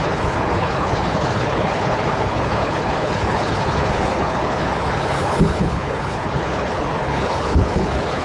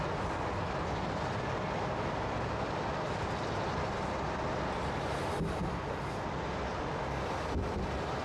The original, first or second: second